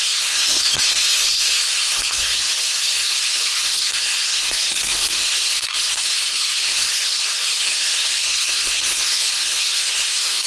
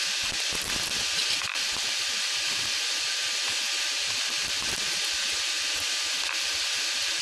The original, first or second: second